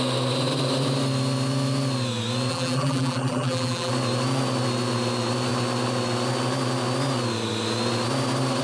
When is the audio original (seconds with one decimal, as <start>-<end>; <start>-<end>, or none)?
0.0-2.5; 3.9-8.6